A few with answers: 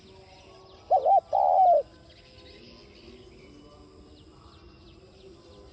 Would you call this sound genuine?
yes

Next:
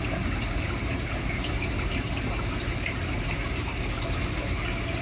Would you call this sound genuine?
yes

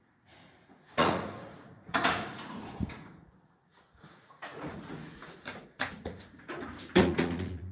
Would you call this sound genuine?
no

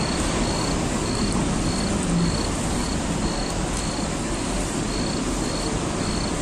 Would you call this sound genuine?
yes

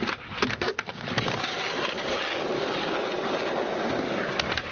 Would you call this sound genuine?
yes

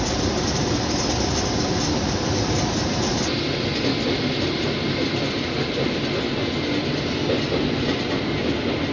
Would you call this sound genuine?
yes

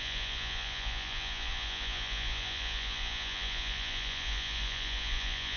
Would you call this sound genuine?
no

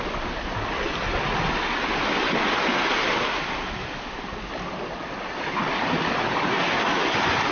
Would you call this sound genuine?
yes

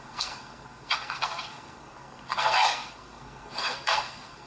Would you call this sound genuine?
no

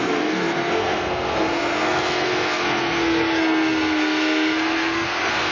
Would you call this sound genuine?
no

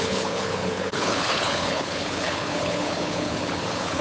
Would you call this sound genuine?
no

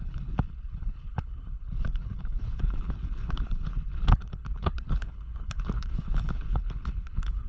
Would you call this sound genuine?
no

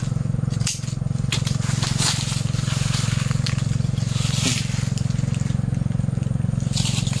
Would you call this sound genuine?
yes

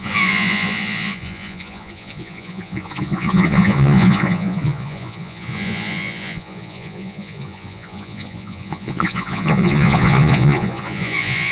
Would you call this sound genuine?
no